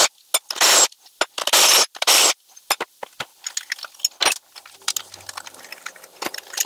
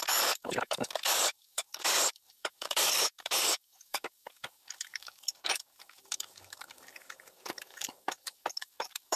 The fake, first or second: second